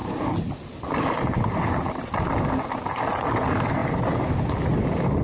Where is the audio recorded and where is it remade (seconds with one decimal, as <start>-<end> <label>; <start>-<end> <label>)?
0.0-5.2 recorded